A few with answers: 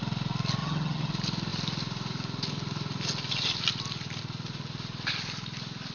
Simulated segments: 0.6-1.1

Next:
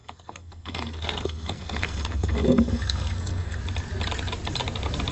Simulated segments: 0.0-3.6

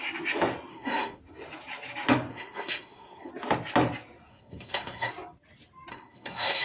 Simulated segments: 0.7-1.2; 2.3-3.3; 4.3-5.1; 5.9-6.6

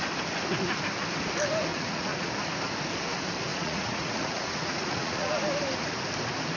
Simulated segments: 1.7-2.3; 3.5-5.3

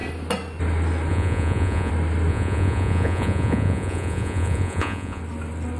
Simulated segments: 1.1-1.9; 2.3-5.2

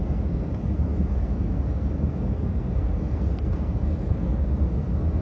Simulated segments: 0.0-5.2